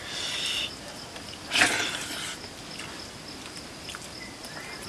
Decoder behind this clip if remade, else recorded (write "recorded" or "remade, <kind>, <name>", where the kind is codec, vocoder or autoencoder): recorded